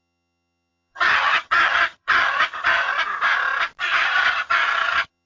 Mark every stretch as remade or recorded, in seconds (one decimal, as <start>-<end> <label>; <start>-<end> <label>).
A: 0.0-2.9 remade; 2.9-3.8 recorded; 3.8-5.3 remade